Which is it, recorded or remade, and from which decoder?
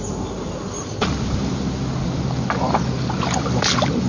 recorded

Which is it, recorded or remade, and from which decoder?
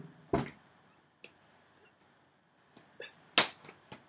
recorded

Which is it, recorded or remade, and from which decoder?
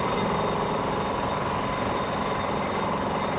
recorded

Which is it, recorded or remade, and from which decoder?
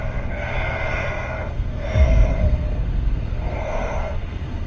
remade, codec, SNAC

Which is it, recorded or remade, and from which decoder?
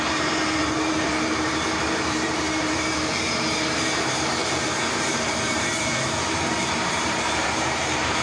remade, vocoder, BigVGAN v2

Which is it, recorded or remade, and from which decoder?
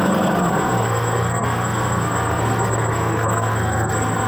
remade, codec, SNAC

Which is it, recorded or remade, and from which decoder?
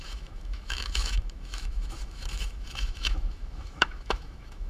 remade, autoencoder, DAC-VAE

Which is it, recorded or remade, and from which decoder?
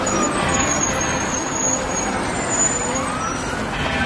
recorded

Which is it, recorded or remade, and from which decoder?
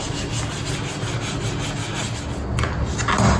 recorded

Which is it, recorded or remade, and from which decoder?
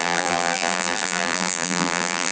remade, vocoder, BigVGAN v2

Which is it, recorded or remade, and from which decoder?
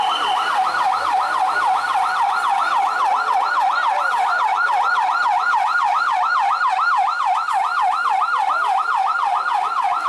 recorded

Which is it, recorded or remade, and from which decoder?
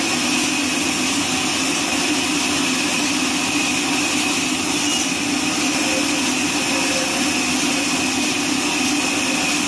recorded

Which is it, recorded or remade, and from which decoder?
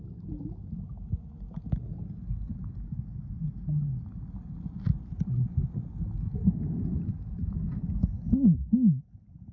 recorded